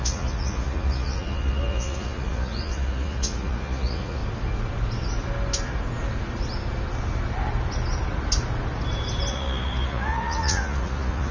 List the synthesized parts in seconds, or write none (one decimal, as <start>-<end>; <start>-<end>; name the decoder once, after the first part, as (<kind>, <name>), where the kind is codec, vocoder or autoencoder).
0.0-4.2 (vocoder, Vocos); 9.3-11.3